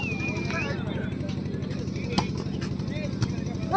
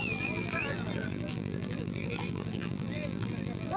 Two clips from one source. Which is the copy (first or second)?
second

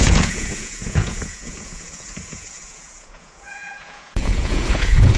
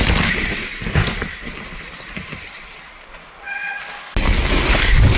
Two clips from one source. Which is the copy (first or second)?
first